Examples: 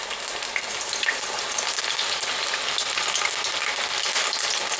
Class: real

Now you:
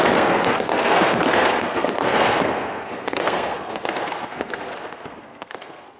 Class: fake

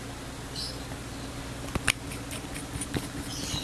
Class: real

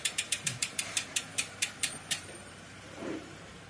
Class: fake